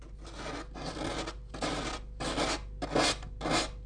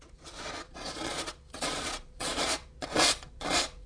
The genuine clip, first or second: first